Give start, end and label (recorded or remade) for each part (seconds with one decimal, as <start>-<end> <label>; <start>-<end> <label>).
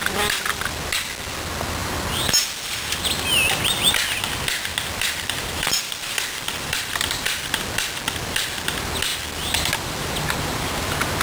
0.0-1.8 recorded; 1.8-2.7 remade; 2.7-4.7 recorded; 4.7-7.5 remade; 7.5-9.1 recorded; 9.1-9.7 remade; 9.7-11.2 recorded